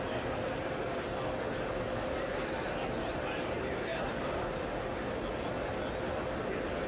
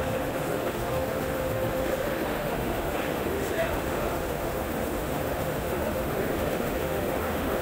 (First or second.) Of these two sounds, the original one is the first